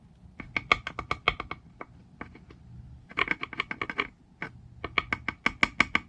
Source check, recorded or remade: recorded